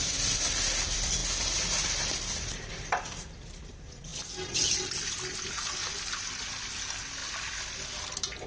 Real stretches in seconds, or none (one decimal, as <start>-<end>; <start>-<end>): 1.2-3.0; 4.1-5.5; 7.2-8.0